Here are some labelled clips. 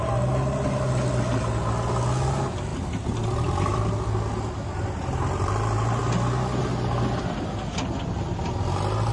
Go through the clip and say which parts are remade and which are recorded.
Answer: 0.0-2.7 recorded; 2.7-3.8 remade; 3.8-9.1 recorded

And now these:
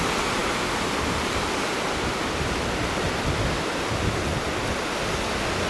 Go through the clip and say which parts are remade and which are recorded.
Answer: 0.0-5.7 recorded

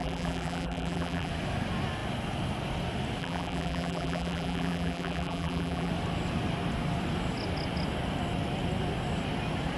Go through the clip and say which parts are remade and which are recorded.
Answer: 0.0-1.3 remade; 1.3-3.2 recorded; 3.2-5.9 remade; 5.9-9.8 recorded

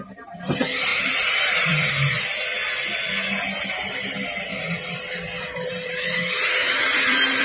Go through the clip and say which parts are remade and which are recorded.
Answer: 0.0-2.6 remade; 2.6-5.7 recorded; 5.7-7.4 remade

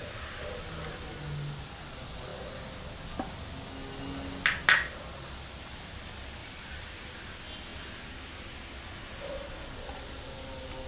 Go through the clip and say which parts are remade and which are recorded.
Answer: 0.0-6.4 recorded; 6.4-7.1 remade; 7.1-10.9 recorded